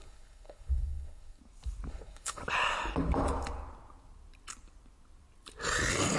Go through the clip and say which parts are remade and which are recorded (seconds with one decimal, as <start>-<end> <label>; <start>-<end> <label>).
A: 0.0-1.4 remade; 1.4-1.9 recorded; 1.9-2.4 remade; 2.4-6.2 recorded